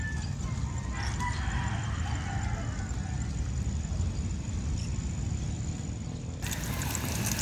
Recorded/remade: recorded